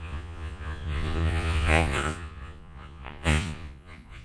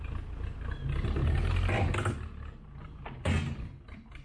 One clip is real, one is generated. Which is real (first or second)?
second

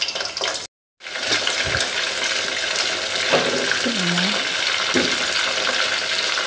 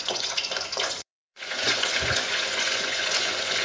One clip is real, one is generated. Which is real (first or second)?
first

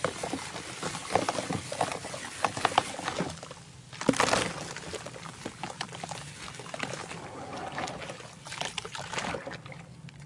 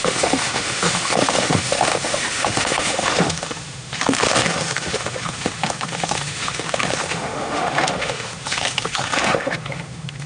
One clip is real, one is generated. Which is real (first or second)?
first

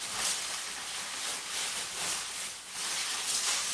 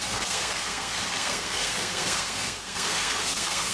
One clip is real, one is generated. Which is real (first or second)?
first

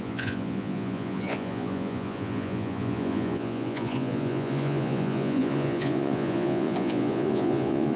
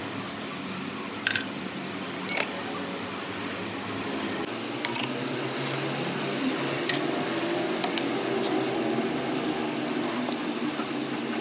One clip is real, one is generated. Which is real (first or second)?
second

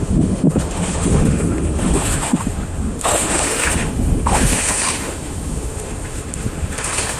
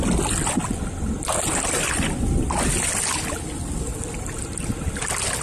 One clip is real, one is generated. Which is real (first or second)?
second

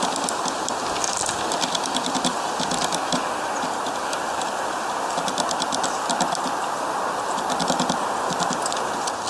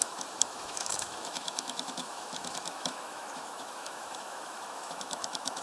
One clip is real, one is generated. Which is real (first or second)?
first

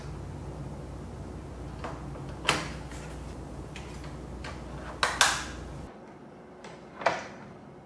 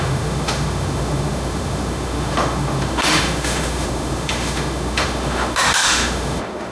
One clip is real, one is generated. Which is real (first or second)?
first